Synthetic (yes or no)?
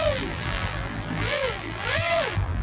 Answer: yes